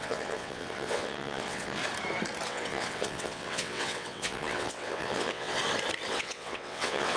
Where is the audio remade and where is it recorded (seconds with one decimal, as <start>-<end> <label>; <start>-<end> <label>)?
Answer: 0.0-1.8 remade; 1.8-2.5 recorded; 2.5-5.6 remade; 5.6-6.1 recorded; 6.1-7.2 remade

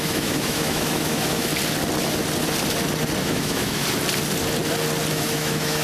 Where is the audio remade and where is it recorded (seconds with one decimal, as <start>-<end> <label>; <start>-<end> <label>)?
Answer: 0.0-1.5 remade; 1.5-3.2 recorded; 3.2-3.8 remade; 3.8-5.1 recorded; 5.1-5.8 remade

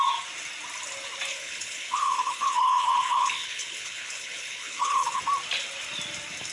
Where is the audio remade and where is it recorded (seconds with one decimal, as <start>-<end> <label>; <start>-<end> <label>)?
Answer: 0.0-1.3 recorded; 1.3-5.2 remade; 5.2-6.5 recorded

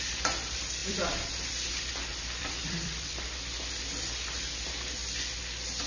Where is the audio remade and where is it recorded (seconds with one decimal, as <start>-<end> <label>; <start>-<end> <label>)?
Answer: 0.0-0.8 recorded; 0.8-1.5 remade; 1.5-2.1 recorded; 2.1-3.2 remade; 3.2-5.9 recorded

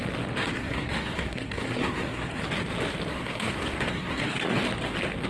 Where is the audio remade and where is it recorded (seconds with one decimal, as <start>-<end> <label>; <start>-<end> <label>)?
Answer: 0.0-0.4 recorded; 0.4-2.4 remade; 2.4-3.1 recorded; 3.1-4.6 remade; 4.6-5.3 recorded

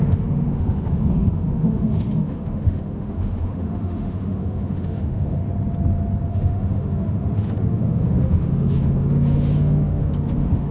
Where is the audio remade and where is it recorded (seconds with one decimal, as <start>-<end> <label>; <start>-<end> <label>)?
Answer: 0.0-5.4 remade; 5.4-6.3 recorded; 6.3-10.7 remade

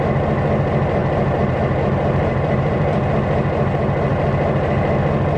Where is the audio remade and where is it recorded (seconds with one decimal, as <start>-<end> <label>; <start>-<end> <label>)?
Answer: 0.0-1.0 recorded; 1.0-3.1 remade; 3.1-5.4 recorded

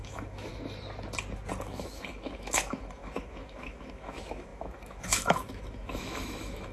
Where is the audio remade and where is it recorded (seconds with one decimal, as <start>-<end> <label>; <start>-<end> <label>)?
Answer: 0.0-0.5 remade; 0.5-1.6 recorded; 1.6-6.7 remade